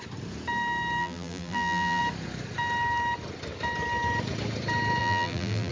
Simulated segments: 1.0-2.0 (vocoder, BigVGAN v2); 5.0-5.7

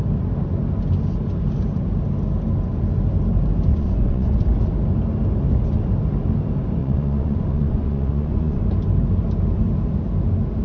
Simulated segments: 3.7-4.4 (vocoder, Vocos); 6.8-8.6

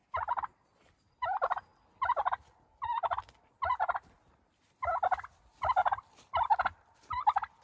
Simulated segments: none